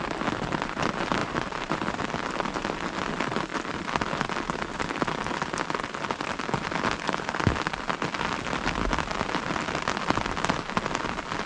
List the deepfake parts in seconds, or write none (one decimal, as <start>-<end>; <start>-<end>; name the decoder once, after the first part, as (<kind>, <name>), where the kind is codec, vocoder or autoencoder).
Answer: 1.2-2.0 (vocoder, BigVGAN v2)